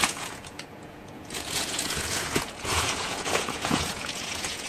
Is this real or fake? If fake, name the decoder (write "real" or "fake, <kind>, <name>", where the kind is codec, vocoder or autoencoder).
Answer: fake, vocoder, Vocos